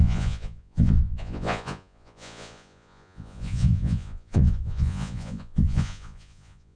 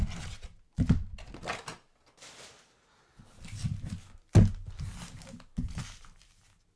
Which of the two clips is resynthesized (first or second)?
first